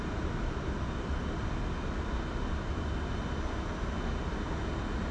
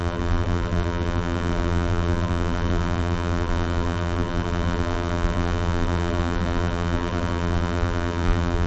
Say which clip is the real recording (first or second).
first